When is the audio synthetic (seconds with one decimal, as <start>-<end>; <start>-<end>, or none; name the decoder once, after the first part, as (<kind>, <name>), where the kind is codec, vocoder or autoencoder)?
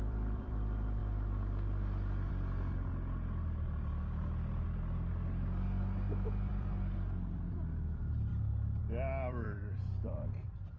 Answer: 0.0-1.0 (vocoder, BigVGAN v2); 2.3-8.3; 8.8-10.8